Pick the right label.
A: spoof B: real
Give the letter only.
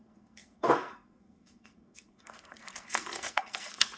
A